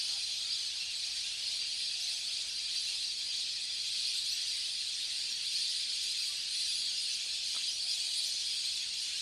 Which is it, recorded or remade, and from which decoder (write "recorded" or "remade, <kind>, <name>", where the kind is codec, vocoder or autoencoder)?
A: recorded